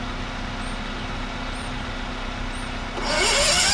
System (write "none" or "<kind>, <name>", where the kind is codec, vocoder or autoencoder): none